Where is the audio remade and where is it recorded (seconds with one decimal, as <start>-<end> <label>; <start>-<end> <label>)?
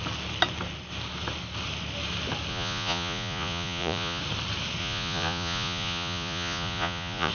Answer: 0.0-2.5 recorded; 2.5-4.2 remade; 4.2-4.8 recorded; 4.8-7.3 remade